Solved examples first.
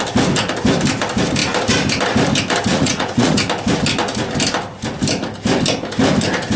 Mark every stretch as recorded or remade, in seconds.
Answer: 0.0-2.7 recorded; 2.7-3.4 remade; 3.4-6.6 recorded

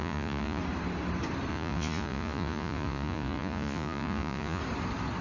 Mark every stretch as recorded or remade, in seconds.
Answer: 0.0-0.6 remade; 0.6-1.5 recorded; 1.5-4.6 remade; 4.6-5.2 recorded

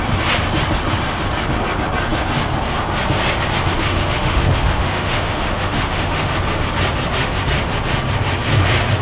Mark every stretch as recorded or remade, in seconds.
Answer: 0.0-3.7 recorded; 3.7-6.3 remade; 6.3-9.0 recorded

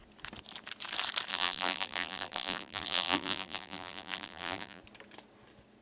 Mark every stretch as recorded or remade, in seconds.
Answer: 0.0-1.3 recorded; 1.3-4.8 remade; 4.8-5.8 recorded

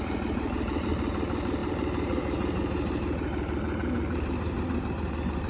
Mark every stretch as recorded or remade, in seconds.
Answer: 0.0-5.5 remade